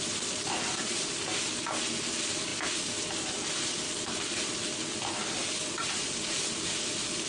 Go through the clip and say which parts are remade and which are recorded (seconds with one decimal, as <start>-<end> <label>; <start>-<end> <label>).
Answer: 0.0-7.3 recorded